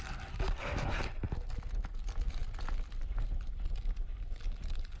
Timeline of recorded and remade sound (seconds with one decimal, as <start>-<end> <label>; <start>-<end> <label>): 0.0-5.0 recorded